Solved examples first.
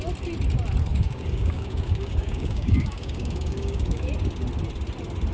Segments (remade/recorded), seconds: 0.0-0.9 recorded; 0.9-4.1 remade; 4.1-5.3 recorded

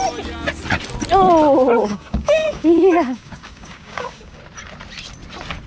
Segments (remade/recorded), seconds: 0.0-1.8 recorded; 1.8-4.4 remade; 4.4-5.7 recorded